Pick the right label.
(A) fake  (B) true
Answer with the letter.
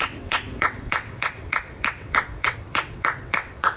A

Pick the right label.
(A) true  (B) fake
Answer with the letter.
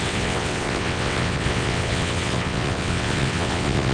B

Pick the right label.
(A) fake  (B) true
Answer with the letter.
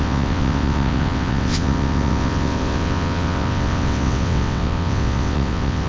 A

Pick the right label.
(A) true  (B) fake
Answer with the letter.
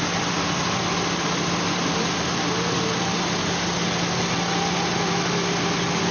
A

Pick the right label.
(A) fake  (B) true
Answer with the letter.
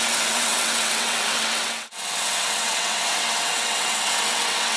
A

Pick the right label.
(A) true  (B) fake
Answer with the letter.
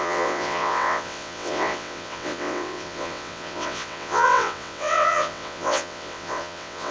B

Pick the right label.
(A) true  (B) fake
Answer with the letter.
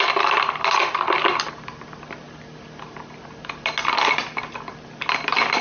A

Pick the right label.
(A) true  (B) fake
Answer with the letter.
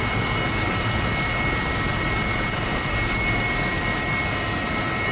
A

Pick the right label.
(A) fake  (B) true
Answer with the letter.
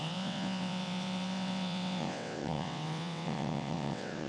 A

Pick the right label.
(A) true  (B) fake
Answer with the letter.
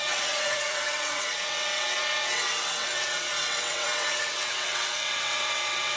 B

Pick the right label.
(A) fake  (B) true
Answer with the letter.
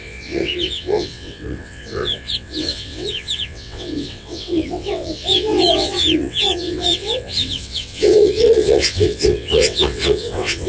A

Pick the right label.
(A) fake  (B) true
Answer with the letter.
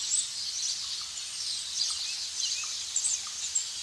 B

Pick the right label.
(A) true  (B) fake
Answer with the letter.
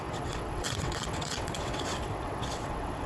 B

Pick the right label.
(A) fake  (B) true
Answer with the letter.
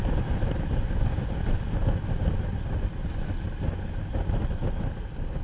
B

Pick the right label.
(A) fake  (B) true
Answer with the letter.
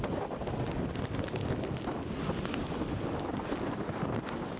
B